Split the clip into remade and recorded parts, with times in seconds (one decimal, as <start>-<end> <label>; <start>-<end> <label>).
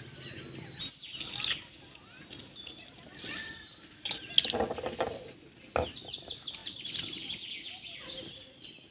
0.0-8.9 recorded